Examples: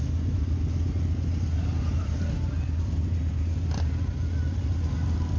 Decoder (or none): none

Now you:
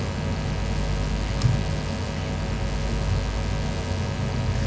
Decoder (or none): none